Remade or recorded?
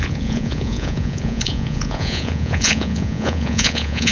remade